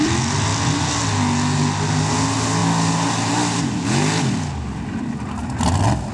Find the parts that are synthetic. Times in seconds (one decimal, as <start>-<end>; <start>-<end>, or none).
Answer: none